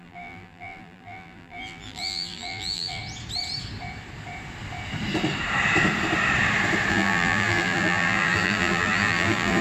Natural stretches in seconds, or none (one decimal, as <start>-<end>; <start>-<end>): 3.0-6.9